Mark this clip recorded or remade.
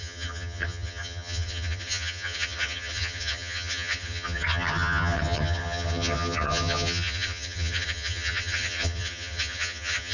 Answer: remade